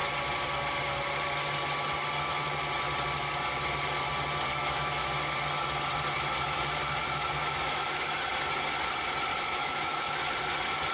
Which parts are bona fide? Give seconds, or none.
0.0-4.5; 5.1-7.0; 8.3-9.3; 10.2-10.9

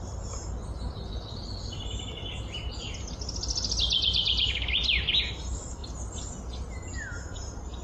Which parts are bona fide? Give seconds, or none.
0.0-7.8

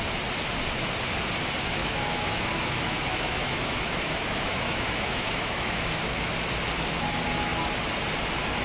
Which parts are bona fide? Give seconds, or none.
0.0-1.8; 6.3-8.6

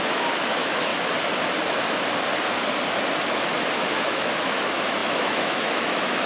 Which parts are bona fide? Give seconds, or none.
0.9-3.9

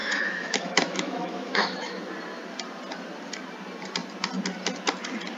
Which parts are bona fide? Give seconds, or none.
2.0-5.4

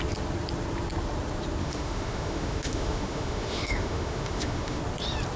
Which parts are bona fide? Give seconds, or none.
0.0-1.6; 4.8-5.4